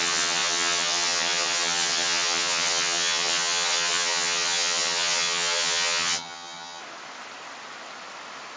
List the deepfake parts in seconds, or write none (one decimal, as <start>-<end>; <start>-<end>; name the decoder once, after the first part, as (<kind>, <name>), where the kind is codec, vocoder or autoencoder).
0.0-6.8 (vocoder, HiFi-GAN)